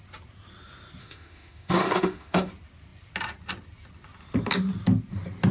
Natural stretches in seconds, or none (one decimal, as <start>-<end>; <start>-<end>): 0.0-1.0; 2.5-5.5